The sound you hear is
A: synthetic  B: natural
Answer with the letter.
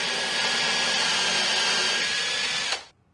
B